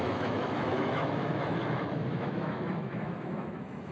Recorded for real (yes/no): no